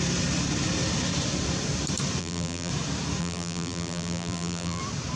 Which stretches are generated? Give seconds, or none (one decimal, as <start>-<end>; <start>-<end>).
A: 2.2-2.7; 3.2-4.8